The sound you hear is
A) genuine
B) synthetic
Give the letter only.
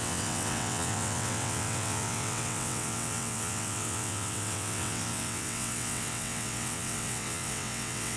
B